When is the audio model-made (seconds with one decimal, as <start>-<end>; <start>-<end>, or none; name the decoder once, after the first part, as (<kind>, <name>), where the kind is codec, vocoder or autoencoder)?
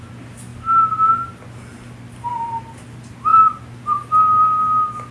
none